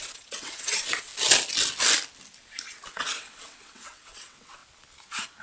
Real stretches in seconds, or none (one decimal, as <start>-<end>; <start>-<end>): 1.1-2.9; 4.6-5.4